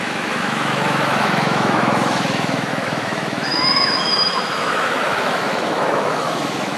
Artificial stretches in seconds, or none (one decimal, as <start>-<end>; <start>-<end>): 0.0-6.8